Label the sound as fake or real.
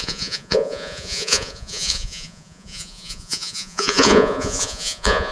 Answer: fake